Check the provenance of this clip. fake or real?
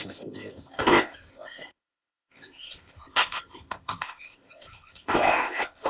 fake